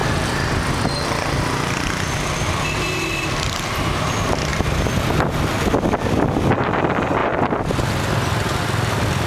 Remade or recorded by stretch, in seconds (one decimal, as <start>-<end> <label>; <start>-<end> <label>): 0.0-9.3 recorded